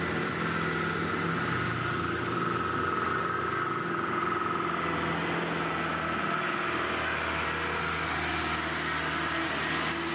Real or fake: real